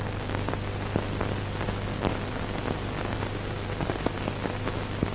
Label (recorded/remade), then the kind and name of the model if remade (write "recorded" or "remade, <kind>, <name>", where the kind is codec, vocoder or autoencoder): recorded